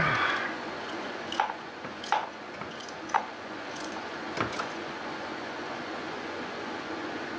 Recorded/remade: remade